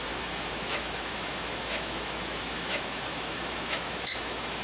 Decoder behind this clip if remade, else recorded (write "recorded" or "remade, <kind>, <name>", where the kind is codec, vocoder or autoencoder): remade, autoencoder, DAC-VAE